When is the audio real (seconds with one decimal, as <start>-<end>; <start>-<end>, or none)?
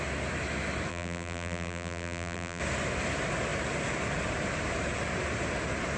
0.0-0.9; 2.6-6.0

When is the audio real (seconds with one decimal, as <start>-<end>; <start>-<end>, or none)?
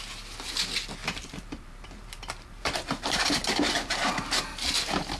0.0-1.0; 4.1-5.2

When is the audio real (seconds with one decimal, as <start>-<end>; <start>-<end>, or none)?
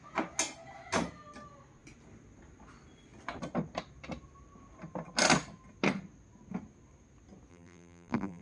0.0-7.5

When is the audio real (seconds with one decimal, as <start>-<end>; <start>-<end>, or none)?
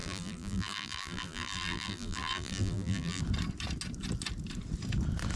3.2-5.4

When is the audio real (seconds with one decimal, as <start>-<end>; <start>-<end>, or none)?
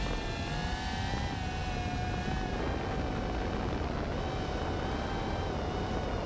0.0-6.3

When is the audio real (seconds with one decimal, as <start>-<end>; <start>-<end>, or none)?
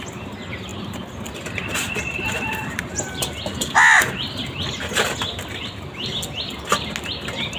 0.0-0.7; 4.8-7.6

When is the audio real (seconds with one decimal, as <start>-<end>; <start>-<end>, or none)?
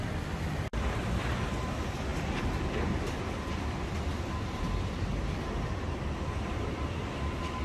0.0-7.6